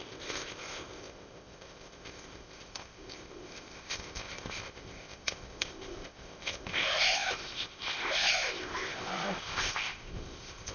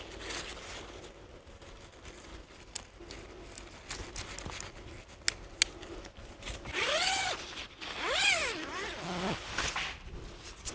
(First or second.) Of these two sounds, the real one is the second